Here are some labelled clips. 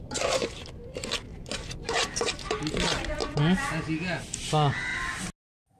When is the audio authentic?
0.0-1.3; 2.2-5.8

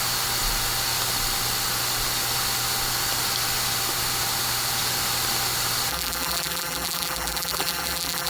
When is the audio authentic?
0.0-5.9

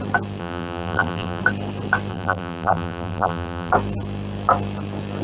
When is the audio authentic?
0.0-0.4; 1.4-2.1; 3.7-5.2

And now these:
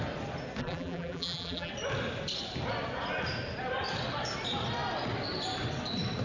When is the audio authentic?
0.0-0.6; 1.7-6.2

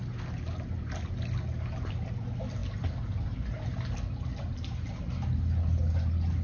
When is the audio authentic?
0.0-6.4

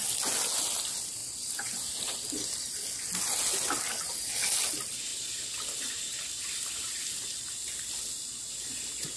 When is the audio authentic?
0.0-5.1; 7.4-9.2

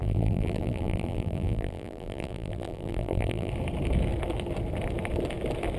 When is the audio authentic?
3.5-5.8